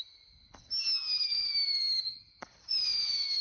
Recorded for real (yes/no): yes